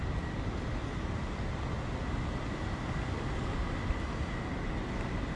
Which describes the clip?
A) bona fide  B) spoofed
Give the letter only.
A